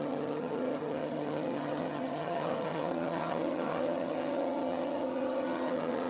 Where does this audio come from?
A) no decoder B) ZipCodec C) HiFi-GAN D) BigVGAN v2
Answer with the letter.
C